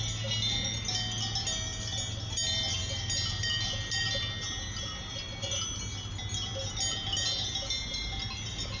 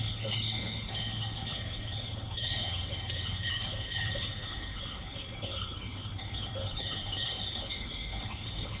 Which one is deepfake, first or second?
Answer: second